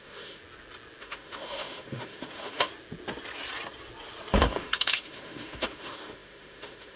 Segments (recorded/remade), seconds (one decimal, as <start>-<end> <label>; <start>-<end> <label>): 0.0-0.4 remade; 0.4-1.0 recorded; 1.0-2.7 remade; 2.7-4.4 recorded; 4.4-7.0 remade